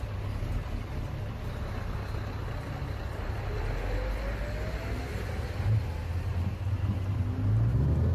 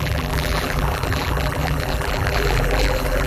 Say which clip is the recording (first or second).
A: first